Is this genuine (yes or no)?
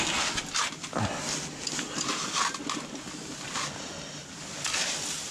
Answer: yes